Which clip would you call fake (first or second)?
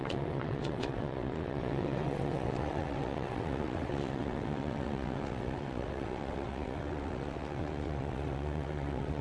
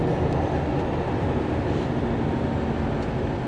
first